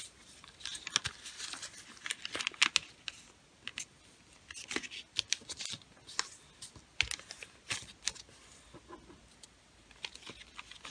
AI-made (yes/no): no